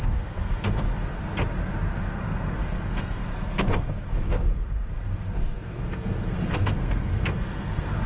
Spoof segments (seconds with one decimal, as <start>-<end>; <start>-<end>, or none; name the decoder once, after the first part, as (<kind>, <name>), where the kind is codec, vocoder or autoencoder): 0.0-1.2 (codec, SNAC); 2.0-8.1